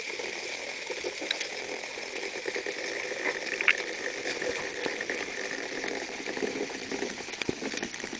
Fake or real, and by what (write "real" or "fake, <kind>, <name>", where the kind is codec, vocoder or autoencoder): real